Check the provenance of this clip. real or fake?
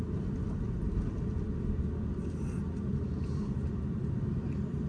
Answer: real